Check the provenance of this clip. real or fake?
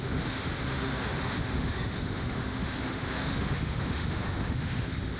fake